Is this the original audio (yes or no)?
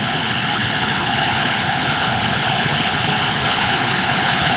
no